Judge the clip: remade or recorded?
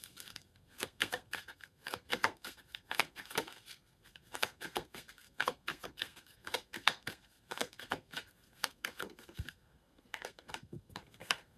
remade